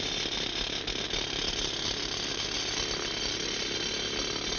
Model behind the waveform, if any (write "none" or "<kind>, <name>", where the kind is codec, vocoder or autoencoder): none